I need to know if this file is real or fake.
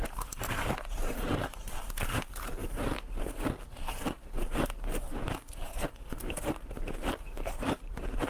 fake